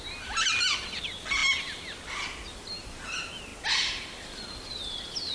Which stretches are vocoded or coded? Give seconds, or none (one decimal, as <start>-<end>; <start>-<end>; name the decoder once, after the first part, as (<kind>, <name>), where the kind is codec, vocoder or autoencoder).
none